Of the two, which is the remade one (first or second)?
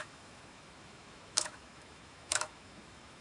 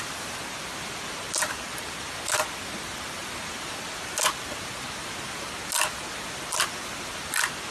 first